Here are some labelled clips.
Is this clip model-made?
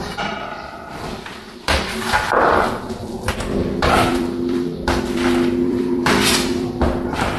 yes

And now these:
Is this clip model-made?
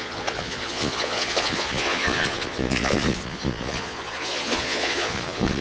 yes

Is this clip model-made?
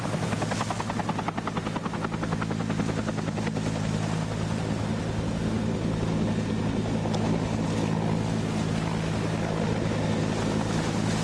no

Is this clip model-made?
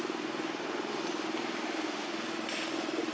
no